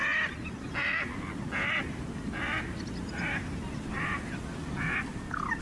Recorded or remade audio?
recorded